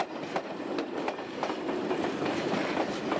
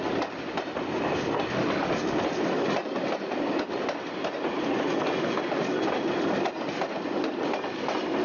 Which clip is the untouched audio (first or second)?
second